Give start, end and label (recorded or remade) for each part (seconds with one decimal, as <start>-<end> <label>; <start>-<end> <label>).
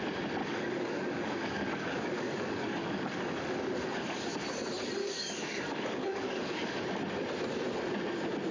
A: 0.0-0.4 recorded; 0.4-4.3 remade; 4.3-5.0 recorded; 5.0-6.8 remade; 6.8-8.5 recorded